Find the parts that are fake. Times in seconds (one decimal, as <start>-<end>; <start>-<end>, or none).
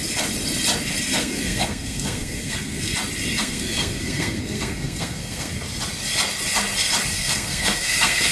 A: 1.2-2.9; 3.4-5.5; 7.1-8.3